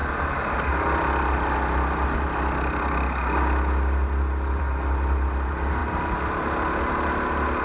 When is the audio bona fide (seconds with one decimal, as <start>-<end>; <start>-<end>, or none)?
0.0-7.6